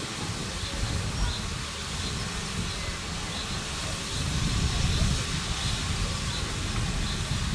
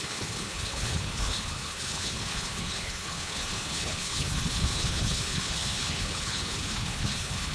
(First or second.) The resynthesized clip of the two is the second